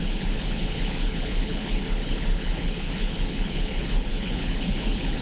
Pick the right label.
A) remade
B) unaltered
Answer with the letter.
A